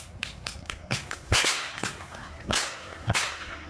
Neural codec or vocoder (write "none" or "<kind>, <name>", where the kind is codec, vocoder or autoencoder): codec, SNAC